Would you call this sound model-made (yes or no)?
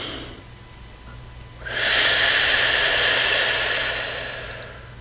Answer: no